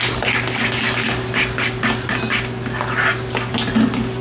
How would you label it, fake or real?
real